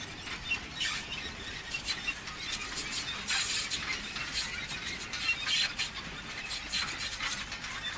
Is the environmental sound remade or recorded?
recorded